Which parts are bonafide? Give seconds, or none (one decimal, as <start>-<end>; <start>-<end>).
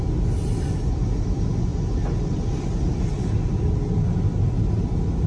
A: 0.0-5.3